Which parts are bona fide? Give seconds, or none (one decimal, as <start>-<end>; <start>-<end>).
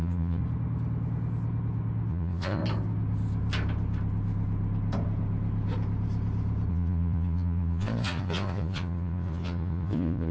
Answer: 0.4-2.1; 2.6-6.7